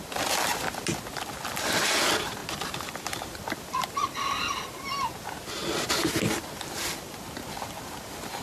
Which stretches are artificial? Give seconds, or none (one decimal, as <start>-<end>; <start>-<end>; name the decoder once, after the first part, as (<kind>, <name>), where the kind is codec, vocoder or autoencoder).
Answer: none

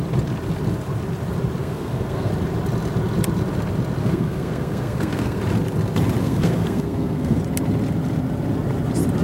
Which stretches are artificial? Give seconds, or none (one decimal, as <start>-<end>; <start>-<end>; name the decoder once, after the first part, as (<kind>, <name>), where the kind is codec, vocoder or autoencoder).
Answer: 1.6-2.3 (codec, SNAC); 4.0-5.4; 6.2-7.4

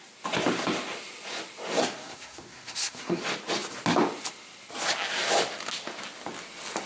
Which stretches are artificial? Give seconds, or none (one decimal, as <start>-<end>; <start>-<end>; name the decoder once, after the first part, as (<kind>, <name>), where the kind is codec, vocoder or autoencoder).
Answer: 1.8-3.2 (codec, SNAC)

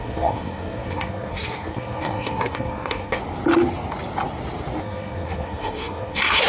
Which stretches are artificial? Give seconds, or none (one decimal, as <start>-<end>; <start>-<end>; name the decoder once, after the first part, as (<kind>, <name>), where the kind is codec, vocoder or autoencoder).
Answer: 0.0-3.2 (codec, SNAC); 4.8-6.5

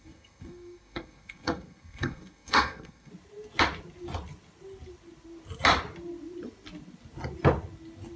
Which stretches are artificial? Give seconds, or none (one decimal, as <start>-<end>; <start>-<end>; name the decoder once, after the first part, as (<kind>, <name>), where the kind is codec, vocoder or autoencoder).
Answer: 0.0-3.1 (codec, SNAC)

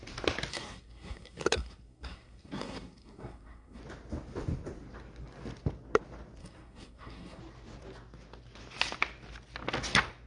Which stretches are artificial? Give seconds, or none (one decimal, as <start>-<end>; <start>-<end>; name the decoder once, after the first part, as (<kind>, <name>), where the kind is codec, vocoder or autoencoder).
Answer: 0.5-3.8 (codec, SNAC); 6.4-7.4

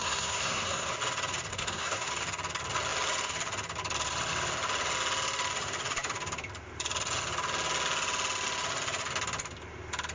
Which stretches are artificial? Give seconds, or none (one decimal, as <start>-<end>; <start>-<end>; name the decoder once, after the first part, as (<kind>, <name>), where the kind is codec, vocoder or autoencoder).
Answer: 0.0-0.9 (codec, SNAC); 1.5-2.1

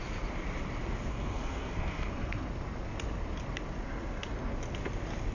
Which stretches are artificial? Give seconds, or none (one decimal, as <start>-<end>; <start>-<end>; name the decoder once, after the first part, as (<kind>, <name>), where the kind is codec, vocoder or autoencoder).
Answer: 1.1-2.5 (codec, SNAC)